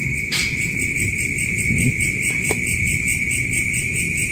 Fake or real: fake